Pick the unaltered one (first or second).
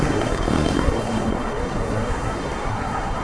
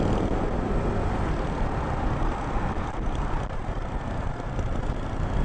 second